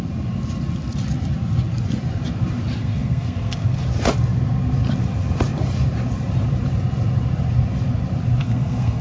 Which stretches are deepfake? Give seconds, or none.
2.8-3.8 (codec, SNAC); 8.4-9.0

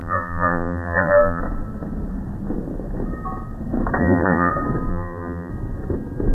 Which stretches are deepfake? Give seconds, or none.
0.0-1.4 (vocoder, BigVGAN v2); 4.0-4.5; 4.9-5.5

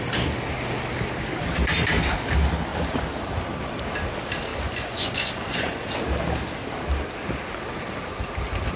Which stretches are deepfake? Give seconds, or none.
4.5-5.8 (vocoder, Vocos)

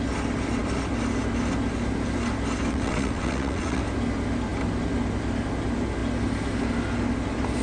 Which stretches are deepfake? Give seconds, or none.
2.7-3.8 (vocoder, WaveNeXt)

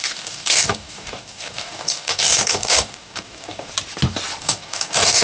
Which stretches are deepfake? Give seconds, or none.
0.0-3.7 (codec, DAC); 4.4-5.2

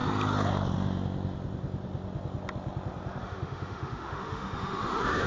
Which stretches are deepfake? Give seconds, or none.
3.2-5.3 (autoencoder, DAC-VAE)